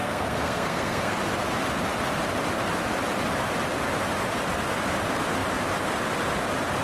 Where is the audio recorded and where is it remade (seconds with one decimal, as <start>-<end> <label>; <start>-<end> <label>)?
0.0-1.2 remade; 1.2-6.8 recorded